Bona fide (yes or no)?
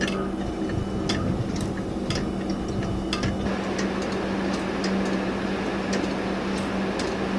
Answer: yes